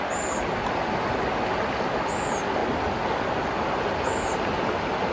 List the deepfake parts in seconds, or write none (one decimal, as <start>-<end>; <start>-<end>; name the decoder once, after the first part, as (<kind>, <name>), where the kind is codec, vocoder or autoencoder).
none